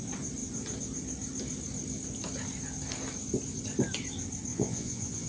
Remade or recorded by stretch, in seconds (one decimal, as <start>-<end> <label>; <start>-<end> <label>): 0.0-4.5 recorded; 4.5-5.3 remade

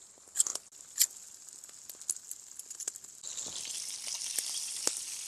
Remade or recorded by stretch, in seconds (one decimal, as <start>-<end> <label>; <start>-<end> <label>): 0.0-5.3 recorded

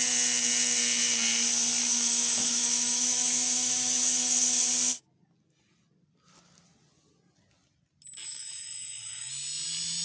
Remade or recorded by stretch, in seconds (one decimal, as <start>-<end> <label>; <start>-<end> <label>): 0.0-1.8 recorded; 1.8-4.7 remade; 4.7-8.2 recorded; 8.2-9.3 remade; 9.3-10.0 recorded

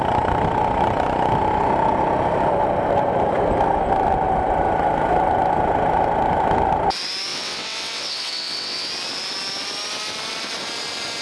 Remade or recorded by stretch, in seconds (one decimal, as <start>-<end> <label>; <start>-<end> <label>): 0.0-7.3 recorded; 7.3-8.9 remade; 8.9-11.2 recorded